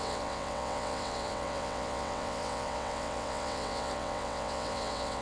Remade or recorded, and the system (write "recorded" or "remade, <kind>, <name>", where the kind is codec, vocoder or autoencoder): remade, vocoder, WaveNeXt